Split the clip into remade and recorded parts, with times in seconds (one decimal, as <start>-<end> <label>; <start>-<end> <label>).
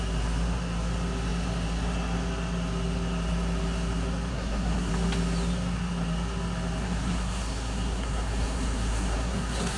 0.0-4.3 recorded; 4.3-4.9 remade; 4.9-6.8 recorded; 6.8-9.8 remade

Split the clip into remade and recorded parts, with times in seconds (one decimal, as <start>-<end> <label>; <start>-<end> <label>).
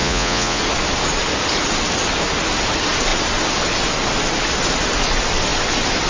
0.0-0.6 remade; 0.6-6.1 recorded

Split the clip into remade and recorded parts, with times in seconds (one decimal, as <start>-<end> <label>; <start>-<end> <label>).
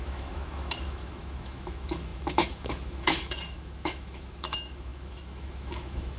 0.0-6.2 remade